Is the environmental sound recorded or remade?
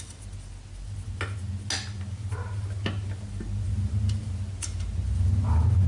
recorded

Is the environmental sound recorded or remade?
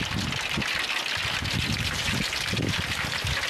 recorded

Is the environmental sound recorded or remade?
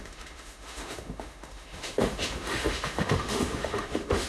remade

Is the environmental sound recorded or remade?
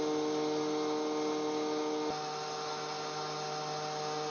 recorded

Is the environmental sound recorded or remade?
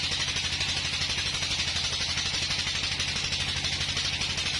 recorded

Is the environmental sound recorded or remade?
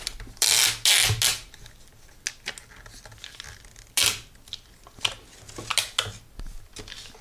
recorded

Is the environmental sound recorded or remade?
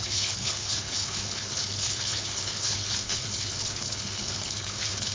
remade